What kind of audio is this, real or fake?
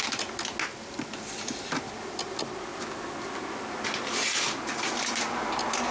real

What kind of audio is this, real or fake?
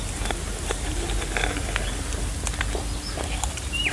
real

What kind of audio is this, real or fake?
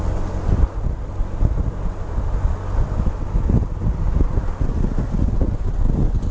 real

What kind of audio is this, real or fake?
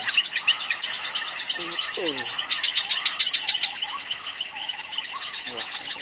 fake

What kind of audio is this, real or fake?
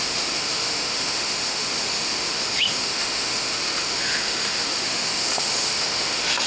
fake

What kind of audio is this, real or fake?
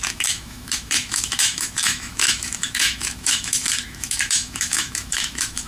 fake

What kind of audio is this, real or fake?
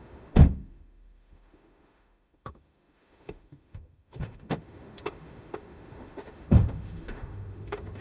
fake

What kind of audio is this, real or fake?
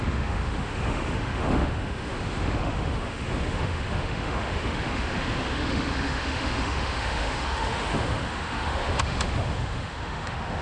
fake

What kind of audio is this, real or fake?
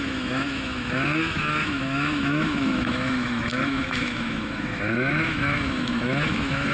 fake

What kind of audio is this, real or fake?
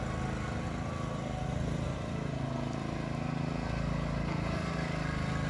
real